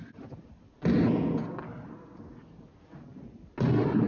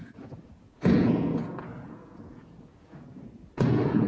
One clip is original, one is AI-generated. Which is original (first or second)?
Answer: first